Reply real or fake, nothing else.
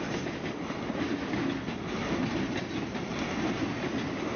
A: real